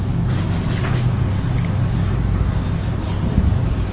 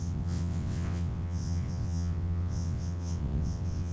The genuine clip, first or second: first